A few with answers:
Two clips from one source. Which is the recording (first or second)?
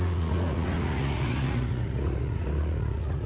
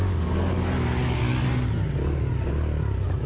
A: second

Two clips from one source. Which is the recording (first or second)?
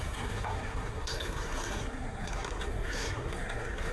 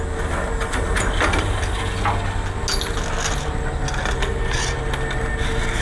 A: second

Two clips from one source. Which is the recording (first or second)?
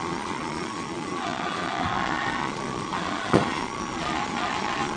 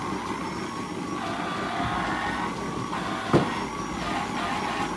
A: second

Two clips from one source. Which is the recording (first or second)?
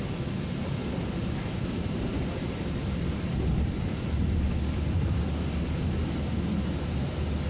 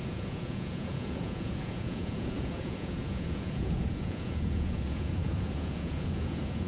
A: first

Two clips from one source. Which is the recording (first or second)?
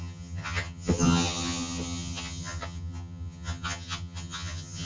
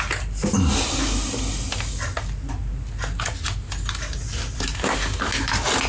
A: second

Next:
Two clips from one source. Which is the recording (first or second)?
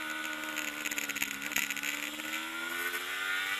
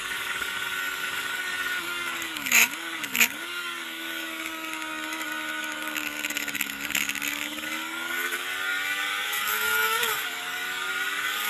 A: first